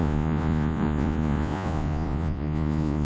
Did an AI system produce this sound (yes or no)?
yes